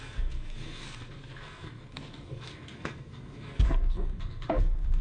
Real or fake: fake